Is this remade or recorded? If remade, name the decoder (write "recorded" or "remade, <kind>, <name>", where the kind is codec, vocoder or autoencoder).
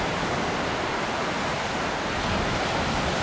recorded